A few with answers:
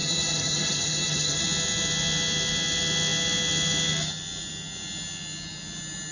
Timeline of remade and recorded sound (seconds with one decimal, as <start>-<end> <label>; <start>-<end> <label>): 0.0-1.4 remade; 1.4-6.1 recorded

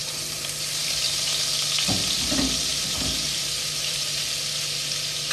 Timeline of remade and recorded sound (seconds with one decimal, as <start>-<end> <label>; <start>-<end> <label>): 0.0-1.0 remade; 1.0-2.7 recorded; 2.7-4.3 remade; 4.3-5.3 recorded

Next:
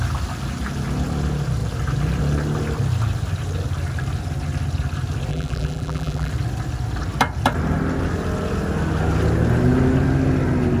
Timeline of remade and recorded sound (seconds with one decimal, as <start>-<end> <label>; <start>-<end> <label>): 0.0-5.3 recorded; 5.3-6.3 remade; 6.3-10.8 recorded

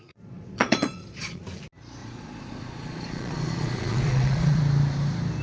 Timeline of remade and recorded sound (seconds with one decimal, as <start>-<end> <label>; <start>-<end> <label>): 0.0-1.4 remade; 1.4-2.0 recorded; 2.0-4.6 remade; 4.6-5.4 recorded

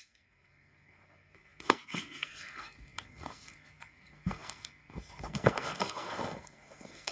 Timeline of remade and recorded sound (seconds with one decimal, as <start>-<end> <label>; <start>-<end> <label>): 0.0-7.1 remade

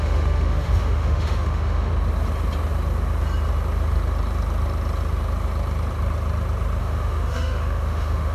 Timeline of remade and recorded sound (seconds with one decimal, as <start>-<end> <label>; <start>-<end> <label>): 0.0-1.9 remade; 1.9-6.8 recorded; 6.8-8.3 remade